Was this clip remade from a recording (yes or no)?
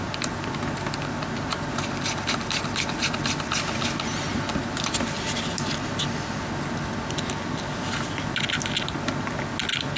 no